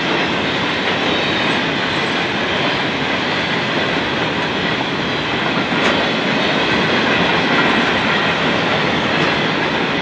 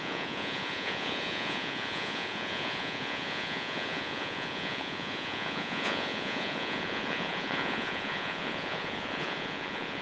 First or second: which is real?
first